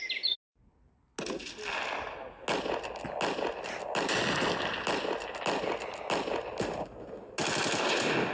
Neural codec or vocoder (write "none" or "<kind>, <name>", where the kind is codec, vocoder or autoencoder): none